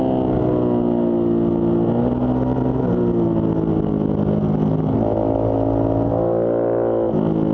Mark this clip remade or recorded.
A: recorded